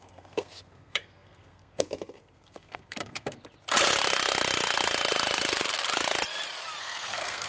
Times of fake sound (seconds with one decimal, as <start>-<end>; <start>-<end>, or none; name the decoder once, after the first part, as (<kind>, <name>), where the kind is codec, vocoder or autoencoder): 0.0-3.4 (codec, SNAC); 6.8-7.5